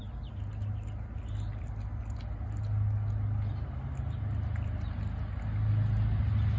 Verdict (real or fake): real